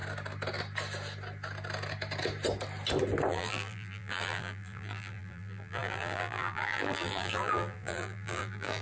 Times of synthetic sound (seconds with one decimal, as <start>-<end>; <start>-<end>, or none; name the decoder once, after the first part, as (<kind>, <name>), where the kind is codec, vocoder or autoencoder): 3.3-8.8 (vocoder, BigVGAN v2)